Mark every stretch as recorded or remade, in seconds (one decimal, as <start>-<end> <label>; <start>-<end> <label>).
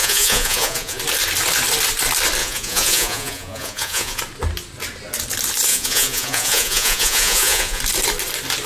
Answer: 0.0-1.0 remade; 1.0-2.4 recorded; 2.4-4.2 remade; 4.2-5.7 recorded; 5.7-7.8 remade; 7.8-8.7 recorded